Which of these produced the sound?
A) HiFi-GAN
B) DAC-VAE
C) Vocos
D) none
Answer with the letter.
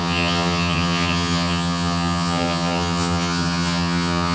A